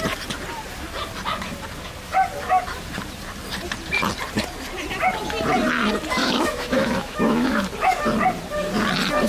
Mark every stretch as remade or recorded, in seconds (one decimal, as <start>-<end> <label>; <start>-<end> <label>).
0.0-6.2 recorded; 6.2-7.6 remade; 7.6-9.3 recorded

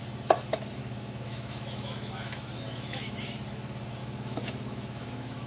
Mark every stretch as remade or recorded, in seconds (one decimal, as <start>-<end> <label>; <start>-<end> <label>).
0.0-0.8 recorded; 0.8-3.2 remade; 3.2-4.0 recorded; 4.0-5.5 remade

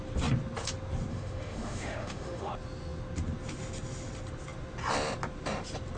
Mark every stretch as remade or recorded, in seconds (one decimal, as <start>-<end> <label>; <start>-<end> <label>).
0.0-1.1 recorded; 1.1-2.5 remade; 2.5-6.0 recorded

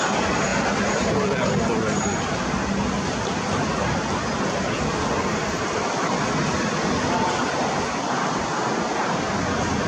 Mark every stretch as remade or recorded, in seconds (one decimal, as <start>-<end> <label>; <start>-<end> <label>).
0.0-9.9 recorded

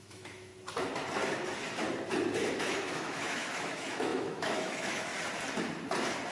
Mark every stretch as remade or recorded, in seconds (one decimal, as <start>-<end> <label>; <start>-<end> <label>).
0.0-0.5 remade; 0.5-2.6 recorded; 2.6-5.1 remade; 5.1-6.3 recorded

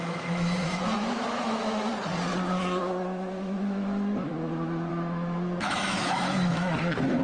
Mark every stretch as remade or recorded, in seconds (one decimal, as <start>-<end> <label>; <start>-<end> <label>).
0.0-1.9 remade; 1.9-2.8 recorded; 2.8-4.3 remade; 4.3-4.9 recorded; 4.9-7.2 remade

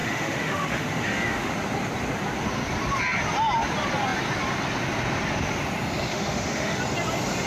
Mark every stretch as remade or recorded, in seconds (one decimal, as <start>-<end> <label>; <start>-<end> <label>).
0.0-1.5 remade; 1.5-6.1 recorded; 6.1-6.8 remade; 6.8-7.5 recorded